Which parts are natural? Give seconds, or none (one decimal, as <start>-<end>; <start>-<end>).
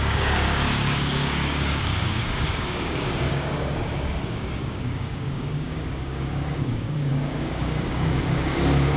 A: none